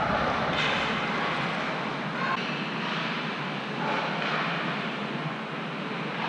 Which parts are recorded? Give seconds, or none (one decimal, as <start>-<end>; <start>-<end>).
0.0-5.0; 5.5-6.3